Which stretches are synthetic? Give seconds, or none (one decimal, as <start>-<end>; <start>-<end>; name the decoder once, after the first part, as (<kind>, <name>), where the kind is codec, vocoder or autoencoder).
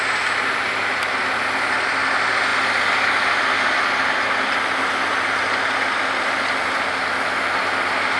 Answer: none